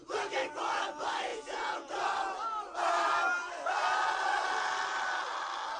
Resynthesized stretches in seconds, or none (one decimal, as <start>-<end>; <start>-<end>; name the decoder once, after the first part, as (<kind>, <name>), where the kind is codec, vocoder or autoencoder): 1.3-1.9 (vocoder, Vocos)